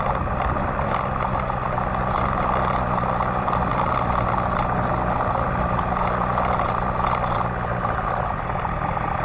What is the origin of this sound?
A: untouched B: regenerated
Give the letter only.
A